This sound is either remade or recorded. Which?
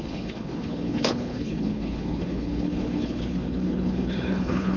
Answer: remade